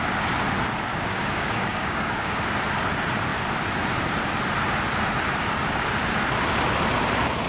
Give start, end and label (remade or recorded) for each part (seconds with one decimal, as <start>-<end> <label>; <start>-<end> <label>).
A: 0.0-0.9 recorded; 0.9-2.4 remade; 2.4-7.5 recorded

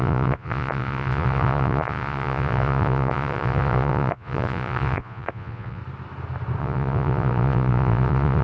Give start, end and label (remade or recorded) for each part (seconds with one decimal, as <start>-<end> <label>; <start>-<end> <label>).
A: 0.0-5.8 remade; 5.8-6.6 recorded; 6.6-8.4 remade

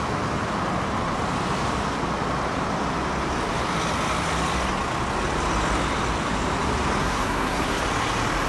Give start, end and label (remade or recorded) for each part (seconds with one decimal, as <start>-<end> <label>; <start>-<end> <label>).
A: 0.0-7.0 recorded; 7.0-7.8 remade; 7.8-8.5 recorded

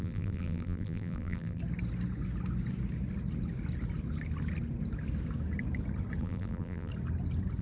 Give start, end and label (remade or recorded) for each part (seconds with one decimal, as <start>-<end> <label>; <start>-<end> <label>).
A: 0.0-1.6 remade; 1.6-6.2 recorded; 6.2-6.9 remade; 6.9-7.6 recorded

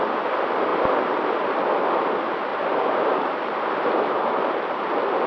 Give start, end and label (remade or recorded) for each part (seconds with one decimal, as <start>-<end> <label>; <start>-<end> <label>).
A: 0.0-0.7 recorded; 0.7-1.3 remade; 1.3-2.5 recorded; 2.5-4.8 remade; 4.8-5.3 recorded

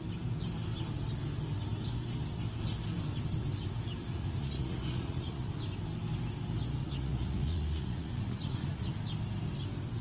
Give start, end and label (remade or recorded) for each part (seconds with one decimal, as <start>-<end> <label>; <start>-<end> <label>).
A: 0.0-4.0 recorded; 4.0-5.5 remade; 5.5-6.8 recorded; 6.8-8.9 remade; 8.9-10.0 recorded

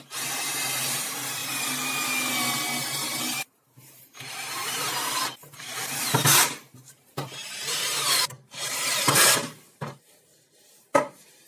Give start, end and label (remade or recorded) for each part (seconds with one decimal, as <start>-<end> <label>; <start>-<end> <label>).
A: 0.0-1.4 remade; 1.4-3.2 recorded; 3.2-11.5 remade

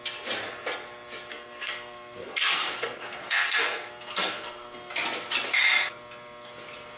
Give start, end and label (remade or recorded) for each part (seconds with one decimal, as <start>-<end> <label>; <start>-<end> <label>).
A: 0.0-1.3 recorded; 1.3-4.9 remade; 4.9-7.0 recorded